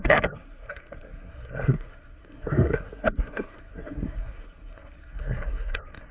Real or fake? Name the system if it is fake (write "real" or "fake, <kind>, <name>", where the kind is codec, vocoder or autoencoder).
fake, codec, SNAC